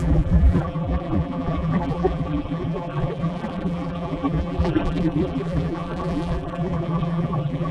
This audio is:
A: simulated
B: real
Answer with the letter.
A